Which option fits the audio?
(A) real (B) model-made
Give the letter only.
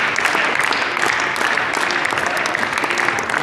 A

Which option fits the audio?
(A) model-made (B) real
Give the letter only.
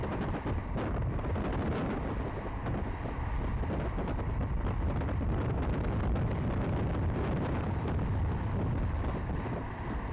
A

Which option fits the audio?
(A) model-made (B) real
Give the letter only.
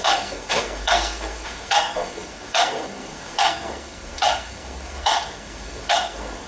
A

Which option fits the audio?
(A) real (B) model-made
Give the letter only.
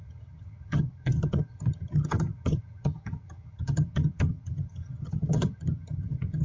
B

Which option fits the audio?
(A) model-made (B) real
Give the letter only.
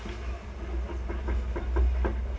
B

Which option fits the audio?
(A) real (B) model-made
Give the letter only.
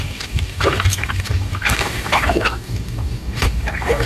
B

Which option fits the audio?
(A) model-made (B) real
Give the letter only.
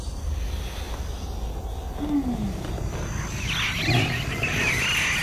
B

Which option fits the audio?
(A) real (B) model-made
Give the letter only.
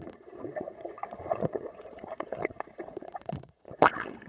B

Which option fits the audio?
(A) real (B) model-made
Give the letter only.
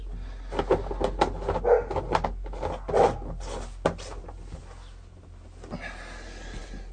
A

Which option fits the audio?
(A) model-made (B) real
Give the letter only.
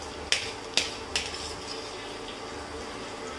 B